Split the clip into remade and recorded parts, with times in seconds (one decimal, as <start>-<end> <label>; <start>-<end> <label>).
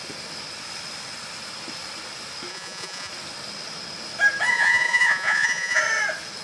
0.0-2.5 recorded; 2.5-3.1 remade; 3.1-4.5 recorded; 4.5-5.8 remade; 5.8-6.4 recorded